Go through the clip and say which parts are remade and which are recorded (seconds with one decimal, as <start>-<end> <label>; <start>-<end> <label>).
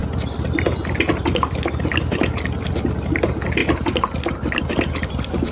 0.0-5.5 recorded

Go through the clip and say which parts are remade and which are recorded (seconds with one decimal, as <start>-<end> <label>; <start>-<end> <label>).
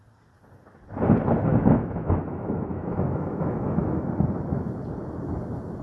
0.0-1.5 recorded; 1.5-4.1 remade; 4.1-5.8 recorded